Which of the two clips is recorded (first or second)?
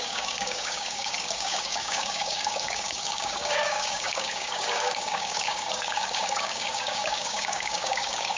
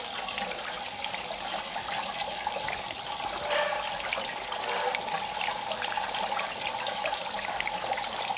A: second